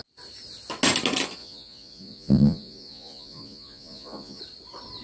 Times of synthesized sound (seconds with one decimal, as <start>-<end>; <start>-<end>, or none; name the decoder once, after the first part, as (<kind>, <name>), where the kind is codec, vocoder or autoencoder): 1.4-4.4 (vocoder, Vocos)